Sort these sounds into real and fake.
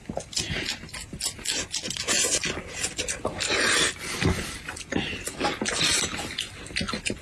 real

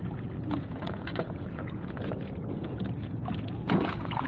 fake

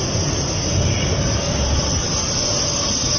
real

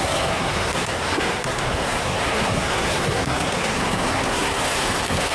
fake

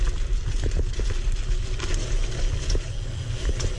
real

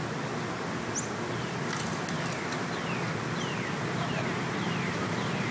real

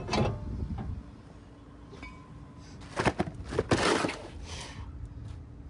real